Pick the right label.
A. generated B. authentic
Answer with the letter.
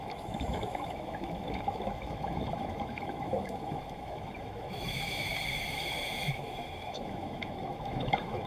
A